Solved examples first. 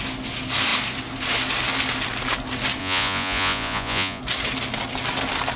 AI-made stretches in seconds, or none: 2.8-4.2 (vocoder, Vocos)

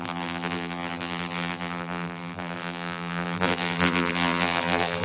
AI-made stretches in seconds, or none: 0.0-5.0 (vocoder, BigVGAN v2)

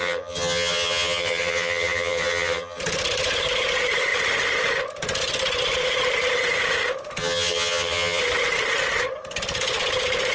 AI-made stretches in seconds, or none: 0.0-2.8 (vocoder, HiFi-GAN); 7.2-8.2

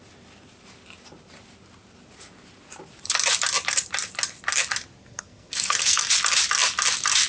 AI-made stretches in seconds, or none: 5.0-6.1 (codec, SNAC)

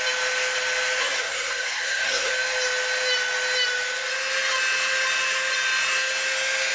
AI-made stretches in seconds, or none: 1.0-2.3 (codec, SNAC)

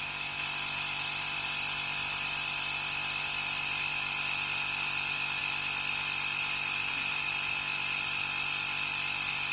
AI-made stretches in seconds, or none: none

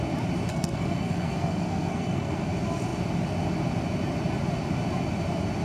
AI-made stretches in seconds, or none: 0.5-2.5 (codec, SNAC)

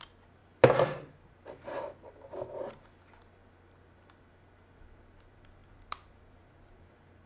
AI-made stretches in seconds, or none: none